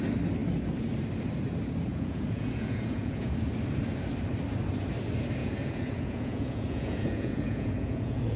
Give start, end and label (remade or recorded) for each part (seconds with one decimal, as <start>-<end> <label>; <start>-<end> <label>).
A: 0.0-1.9 recorded; 1.9-3.3 remade; 3.3-5.4 recorded; 5.4-8.4 remade